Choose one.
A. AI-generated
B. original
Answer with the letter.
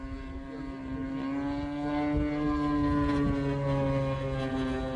B